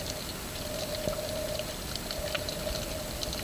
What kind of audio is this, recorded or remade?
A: recorded